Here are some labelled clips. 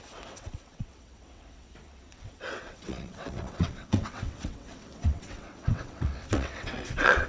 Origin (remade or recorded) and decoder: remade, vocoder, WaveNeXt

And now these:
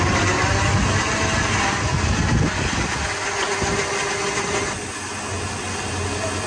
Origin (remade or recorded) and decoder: recorded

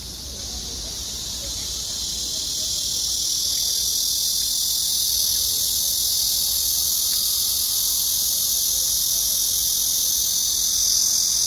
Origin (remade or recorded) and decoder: recorded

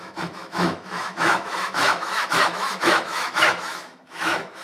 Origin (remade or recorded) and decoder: remade, autoencoder, DAC-VAE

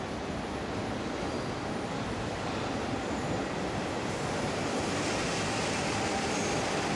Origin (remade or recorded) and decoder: remade, vocoder, BigVGAN v2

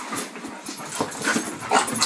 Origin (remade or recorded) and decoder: recorded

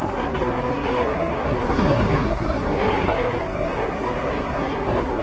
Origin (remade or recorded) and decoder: remade, codec, SNAC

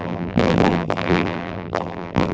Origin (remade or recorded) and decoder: remade, vocoder, BigVGAN v2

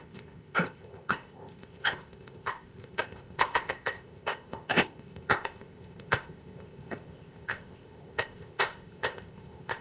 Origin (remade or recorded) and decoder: remade, codec, ZipCodec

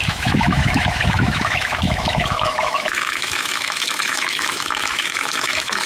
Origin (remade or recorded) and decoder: remade, autoencoder, DAC-VAE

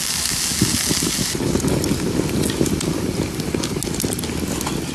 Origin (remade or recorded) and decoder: recorded